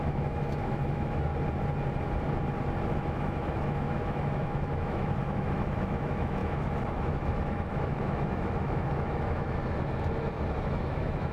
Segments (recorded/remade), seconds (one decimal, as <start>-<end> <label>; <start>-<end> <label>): 0.0-1.3 remade; 1.3-2.8 recorded; 2.8-9.6 remade; 9.6-10.7 recorded; 10.7-11.3 remade